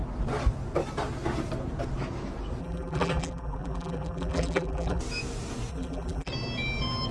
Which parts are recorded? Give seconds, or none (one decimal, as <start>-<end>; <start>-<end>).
0.0-2.6; 5.0-5.7; 6.3-7.1

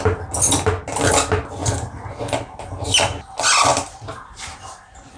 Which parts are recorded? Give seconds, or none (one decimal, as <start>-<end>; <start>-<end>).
0.0-1.6; 2.2-3.7